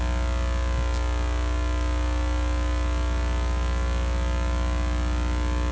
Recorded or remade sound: recorded